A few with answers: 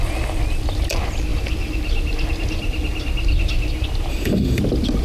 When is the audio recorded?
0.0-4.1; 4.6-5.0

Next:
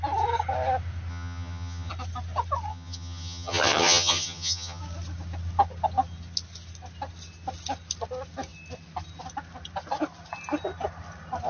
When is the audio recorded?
0.0-1.1; 1.9-2.7; 4.8-11.5

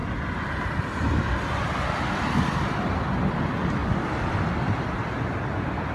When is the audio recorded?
0.0-5.9